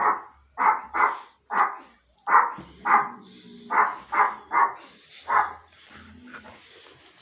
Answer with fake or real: real